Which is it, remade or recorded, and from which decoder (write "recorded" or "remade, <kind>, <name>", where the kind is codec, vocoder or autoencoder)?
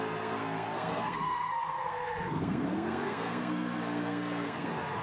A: remade, codec, SNAC